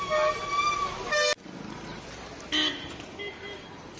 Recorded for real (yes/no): yes